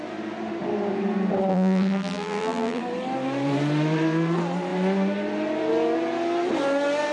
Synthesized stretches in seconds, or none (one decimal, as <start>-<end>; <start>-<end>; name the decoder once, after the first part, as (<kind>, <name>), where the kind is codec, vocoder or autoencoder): 1.5-2.8 (vocoder, BigVGAN v2)